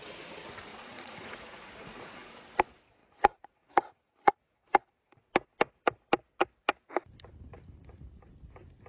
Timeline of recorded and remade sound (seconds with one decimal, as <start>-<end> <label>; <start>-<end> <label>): 0.0-0.7 recorded; 0.7-2.3 remade; 2.3-3.0 recorded; 3.0-4.3 remade; 4.3-8.9 recorded

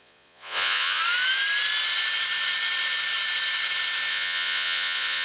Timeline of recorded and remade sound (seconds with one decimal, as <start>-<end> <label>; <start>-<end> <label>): 0.0-1.0 remade; 1.0-4.1 recorded; 4.1-5.2 remade

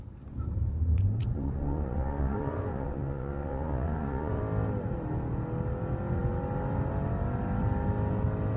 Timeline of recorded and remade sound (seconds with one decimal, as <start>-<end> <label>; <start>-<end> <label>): 0.0-0.9 recorded; 0.9-4.4 remade; 4.4-8.6 recorded